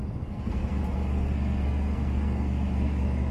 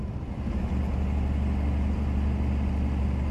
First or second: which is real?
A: second